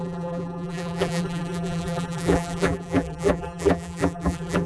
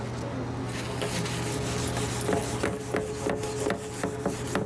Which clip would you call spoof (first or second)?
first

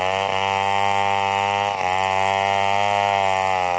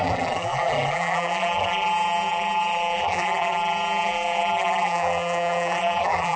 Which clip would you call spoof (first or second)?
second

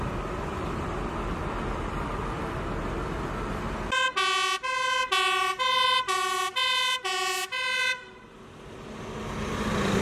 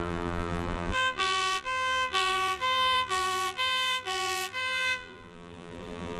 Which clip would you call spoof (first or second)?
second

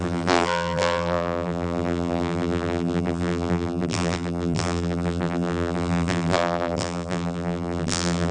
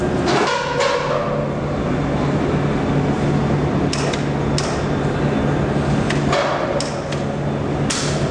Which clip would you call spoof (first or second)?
first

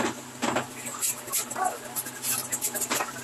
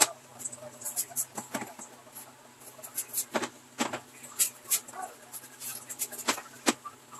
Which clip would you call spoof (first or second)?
first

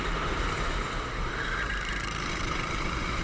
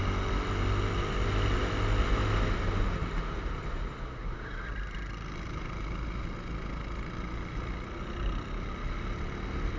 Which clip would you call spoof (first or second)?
first